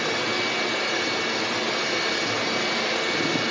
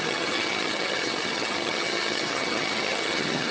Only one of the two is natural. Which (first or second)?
first